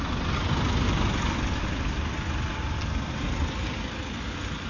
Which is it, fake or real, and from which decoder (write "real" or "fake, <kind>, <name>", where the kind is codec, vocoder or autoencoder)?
real